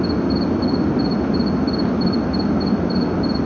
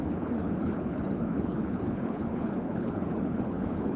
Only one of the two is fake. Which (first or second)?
second